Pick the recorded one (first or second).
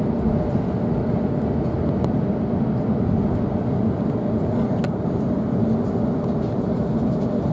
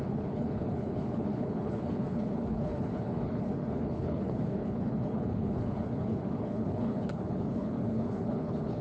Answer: first